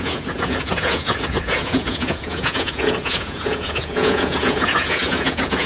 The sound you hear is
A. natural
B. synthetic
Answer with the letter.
B